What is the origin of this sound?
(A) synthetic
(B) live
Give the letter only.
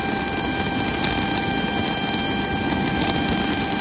B